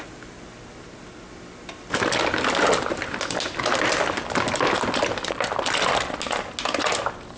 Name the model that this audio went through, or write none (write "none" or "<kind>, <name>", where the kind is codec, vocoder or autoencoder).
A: none